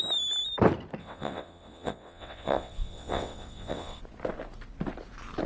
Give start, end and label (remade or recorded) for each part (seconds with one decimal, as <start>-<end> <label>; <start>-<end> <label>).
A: 0.0-1.0 recorded; 1.0-4.0 remade; 4.0-5.5 recorded